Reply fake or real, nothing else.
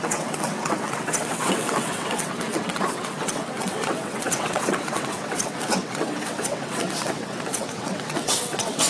fake